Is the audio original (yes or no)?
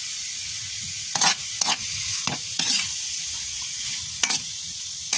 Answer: no